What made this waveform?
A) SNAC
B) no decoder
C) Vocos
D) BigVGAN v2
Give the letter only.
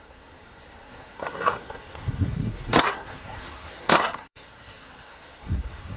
A